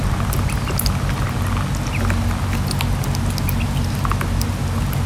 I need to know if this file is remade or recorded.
recorded